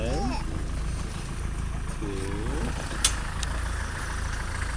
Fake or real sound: real